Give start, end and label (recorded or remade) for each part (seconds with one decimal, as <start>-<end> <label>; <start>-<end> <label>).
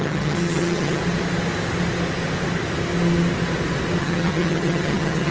0.0-1.0 remade; 1.0-4.0 recorded; 4.0-5.3 remade